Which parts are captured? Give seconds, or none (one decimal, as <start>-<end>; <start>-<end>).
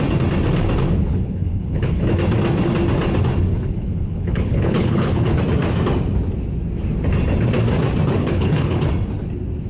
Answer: 0.0-1.0; 2.0-3.5; 5.4-8.2; 8.9-9.7